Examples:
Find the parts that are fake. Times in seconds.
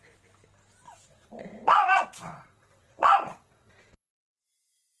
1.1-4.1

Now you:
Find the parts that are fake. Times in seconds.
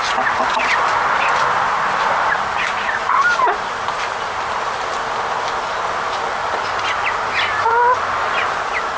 none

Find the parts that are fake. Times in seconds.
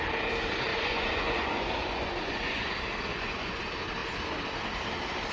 0.7-2.7; 3.1-3.6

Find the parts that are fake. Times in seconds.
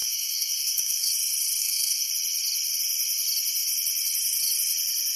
0.0-1.1; 1.6-2.1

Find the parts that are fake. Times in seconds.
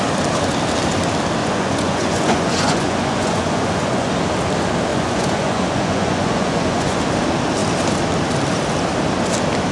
1.4-4.1; 4.9-7.0